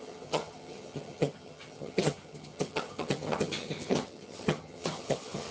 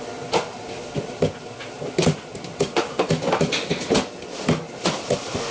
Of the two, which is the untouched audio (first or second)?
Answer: second